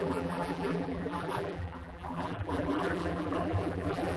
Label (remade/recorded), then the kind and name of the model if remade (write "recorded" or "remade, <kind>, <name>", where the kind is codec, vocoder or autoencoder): remade, vocoder, BigVGAN v2